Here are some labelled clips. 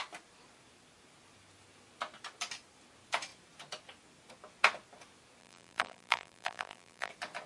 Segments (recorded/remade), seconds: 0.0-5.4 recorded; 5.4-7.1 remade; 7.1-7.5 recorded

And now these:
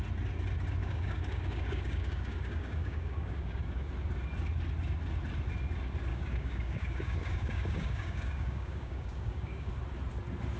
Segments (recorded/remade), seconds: 0.0-0.8 recorded; 0.8-3.9 remade; 3.9-6.1 recorded; 6.1-9.7 remade; 9.7-10.6 recorded

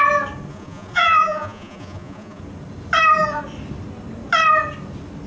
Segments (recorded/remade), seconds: 0.0-0.5 recorded; 0.5-2.4 remade; 2.4-5.3 recorded

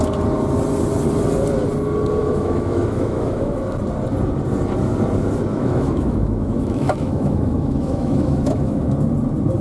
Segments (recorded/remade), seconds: 0.0-2.2 recorded; 2.2-3.6 remade; 3.6-5.5 recorded; 5.5-8.9 remade; 8.9-9.6 recorded

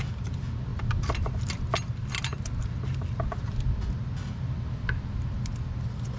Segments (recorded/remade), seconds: 0.0-6.2 recorded

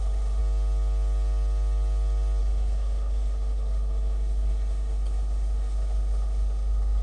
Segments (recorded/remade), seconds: 0.0-0.4 remade; 0.4-2.4 recorded; 2.4-7.0 remade

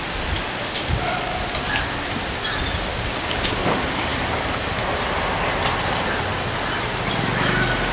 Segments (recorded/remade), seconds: 0.0-2.9 recorded; 2.9-3.6 remade; 3.6-7.9 recorded

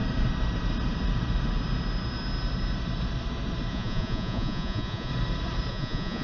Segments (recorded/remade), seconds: 0.0-3.7 recorded; 3.7-5.1 remade; 5.1-5.7 recorded; 5.7-6.2 remade